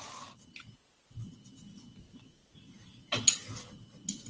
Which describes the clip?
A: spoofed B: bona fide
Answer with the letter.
B